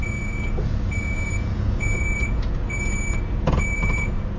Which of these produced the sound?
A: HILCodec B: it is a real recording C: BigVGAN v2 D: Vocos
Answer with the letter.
D